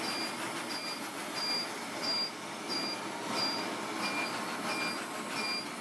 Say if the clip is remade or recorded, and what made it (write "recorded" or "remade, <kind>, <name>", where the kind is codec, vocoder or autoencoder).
recorded